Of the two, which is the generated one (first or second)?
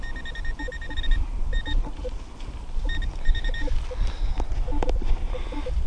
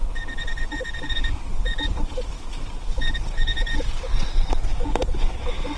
second